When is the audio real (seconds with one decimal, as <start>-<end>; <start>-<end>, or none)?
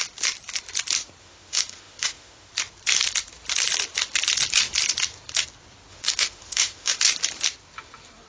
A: 0.0-1.2; 2.5-5.9; 7.0-8.3